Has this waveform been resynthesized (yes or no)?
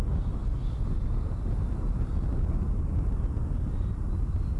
no